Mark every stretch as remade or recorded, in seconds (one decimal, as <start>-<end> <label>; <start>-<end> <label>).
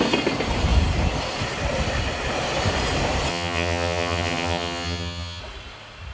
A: 0.0-3.3 recorded; 3.3-5.4 remade; 5.4-6.1 recorded